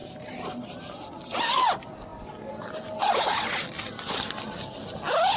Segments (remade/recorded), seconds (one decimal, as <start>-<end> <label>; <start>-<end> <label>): 0.0-5.4 recorded